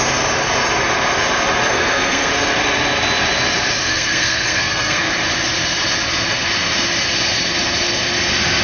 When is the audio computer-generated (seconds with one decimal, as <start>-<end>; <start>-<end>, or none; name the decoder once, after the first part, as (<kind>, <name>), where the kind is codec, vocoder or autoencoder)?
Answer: 1.7-2.3 (codec, SNAC); 3.9-5.1